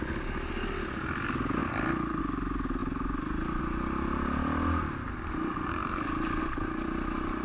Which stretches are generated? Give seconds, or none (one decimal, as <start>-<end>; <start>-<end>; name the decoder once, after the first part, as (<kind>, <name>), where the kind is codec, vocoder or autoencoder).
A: none